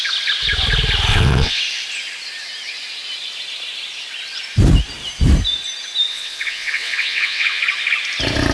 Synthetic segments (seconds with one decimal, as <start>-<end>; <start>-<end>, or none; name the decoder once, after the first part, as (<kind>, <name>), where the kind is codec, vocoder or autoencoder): 1.1-1.6 (vocoder, WaveNeXt); 6.1-7.6